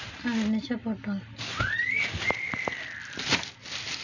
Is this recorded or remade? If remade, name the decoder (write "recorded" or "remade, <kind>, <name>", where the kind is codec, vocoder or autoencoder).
recorded